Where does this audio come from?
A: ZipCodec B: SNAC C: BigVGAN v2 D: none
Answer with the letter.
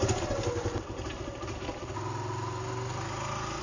D